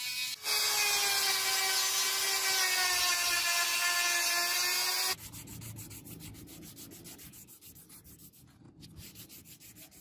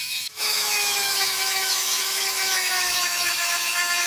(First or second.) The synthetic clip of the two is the second